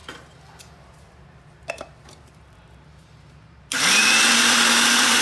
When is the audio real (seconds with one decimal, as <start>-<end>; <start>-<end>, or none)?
none